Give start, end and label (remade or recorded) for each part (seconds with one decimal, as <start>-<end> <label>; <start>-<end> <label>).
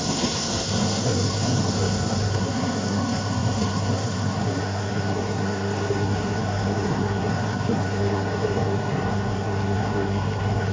0.0-10.7 remade